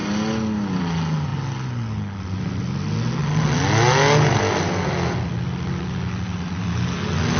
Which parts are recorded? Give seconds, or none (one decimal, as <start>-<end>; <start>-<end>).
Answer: 0.0-7.4